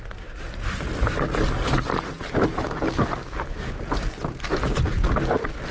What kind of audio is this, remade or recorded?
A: recorded